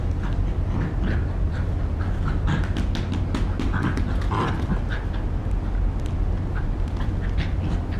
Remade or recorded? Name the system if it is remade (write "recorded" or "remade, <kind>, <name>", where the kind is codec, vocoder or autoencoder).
recorded